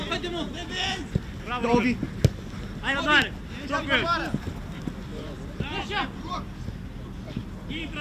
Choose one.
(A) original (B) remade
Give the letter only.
A